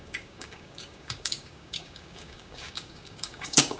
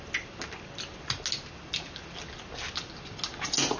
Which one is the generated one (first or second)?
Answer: first